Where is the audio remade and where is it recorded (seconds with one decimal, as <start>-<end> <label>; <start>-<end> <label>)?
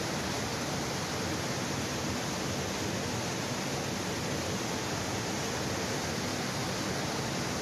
0.0-7.6 recorded